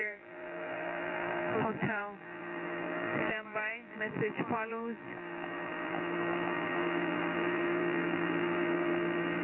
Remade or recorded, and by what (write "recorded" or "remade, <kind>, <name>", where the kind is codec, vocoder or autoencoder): remade, vocoder, BigVGAN v2